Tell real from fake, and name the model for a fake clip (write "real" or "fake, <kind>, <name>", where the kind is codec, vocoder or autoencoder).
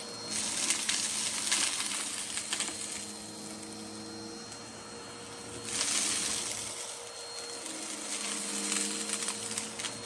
real